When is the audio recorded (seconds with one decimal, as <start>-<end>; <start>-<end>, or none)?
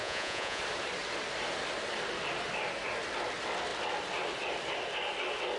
0.6-5.6